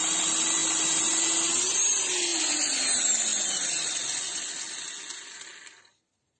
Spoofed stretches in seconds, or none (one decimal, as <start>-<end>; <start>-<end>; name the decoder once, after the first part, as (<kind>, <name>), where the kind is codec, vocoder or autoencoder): 2.3-2.8 (vocoder, Vocos); 3.3-4.5